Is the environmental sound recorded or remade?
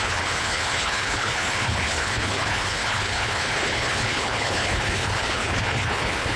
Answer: remade